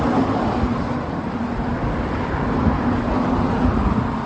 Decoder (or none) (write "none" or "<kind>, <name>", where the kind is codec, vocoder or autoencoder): none